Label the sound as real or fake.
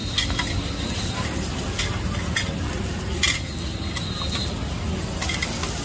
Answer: real